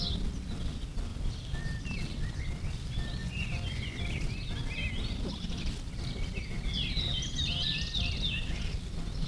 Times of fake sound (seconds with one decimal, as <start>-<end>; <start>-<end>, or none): 3.2-4.0